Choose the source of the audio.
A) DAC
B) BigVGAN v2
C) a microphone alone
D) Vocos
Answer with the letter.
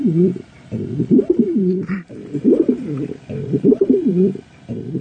B